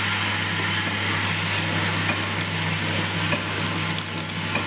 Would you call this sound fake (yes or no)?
no